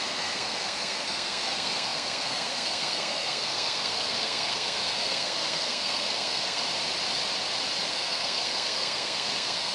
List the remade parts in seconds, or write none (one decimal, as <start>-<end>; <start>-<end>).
0.0-6.6; 7.9-9.7